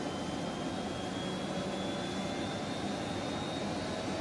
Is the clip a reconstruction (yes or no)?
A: no